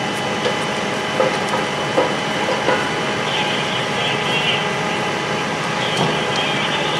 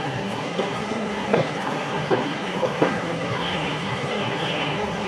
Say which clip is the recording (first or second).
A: first